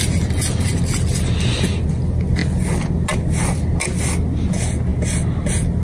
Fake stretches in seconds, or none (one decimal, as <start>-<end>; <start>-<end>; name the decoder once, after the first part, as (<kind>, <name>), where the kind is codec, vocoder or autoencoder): none